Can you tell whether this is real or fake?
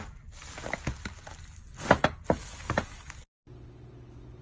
real